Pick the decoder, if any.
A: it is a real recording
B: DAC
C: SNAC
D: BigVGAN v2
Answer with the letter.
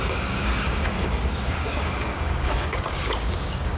B